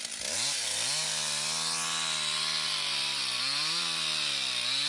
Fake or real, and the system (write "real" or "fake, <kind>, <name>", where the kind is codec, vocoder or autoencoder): real